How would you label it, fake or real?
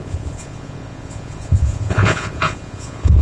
fake